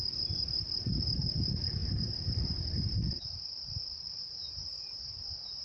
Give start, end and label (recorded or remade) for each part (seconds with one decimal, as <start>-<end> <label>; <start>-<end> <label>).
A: 0.0-5.6 remade